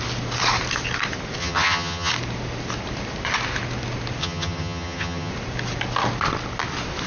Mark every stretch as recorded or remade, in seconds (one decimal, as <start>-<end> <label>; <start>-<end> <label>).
0.0-1.4 recorded; 1.4-2.1 remade; 2.1-4.2 recorded; 4.2-5.3 remade; 5.3-7.1 recorded